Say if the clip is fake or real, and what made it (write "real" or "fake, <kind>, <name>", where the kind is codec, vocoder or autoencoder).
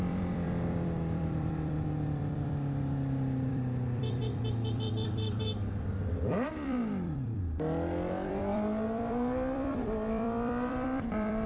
fake, vocoder, BigVGAN v2